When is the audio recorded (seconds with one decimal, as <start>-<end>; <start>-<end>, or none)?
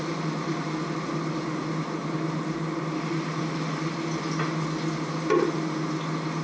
0.0-6.4